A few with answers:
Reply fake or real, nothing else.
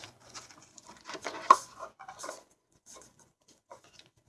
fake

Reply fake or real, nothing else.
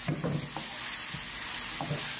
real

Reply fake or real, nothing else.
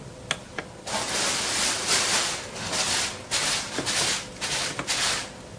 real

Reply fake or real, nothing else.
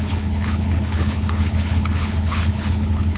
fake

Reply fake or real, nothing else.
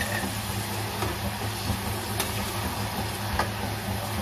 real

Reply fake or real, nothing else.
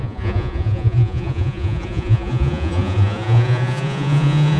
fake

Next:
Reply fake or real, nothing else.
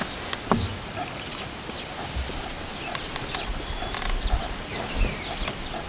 real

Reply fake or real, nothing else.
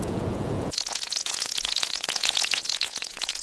fake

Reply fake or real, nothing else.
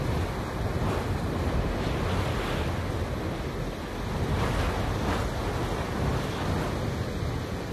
real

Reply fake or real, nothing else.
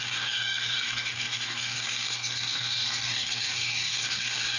fake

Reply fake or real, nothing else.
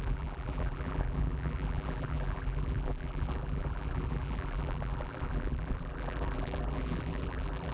fake